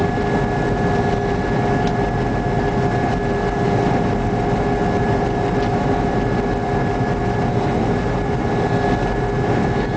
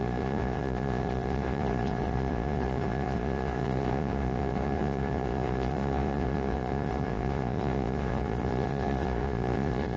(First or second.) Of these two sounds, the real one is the first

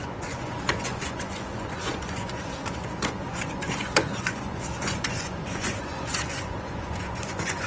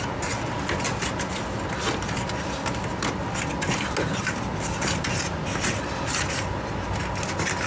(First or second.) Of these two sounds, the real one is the second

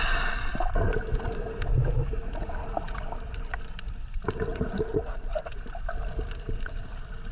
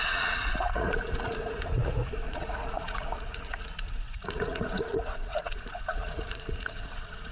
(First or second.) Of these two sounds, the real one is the first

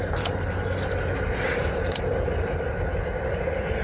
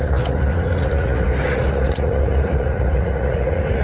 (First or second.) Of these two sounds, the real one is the first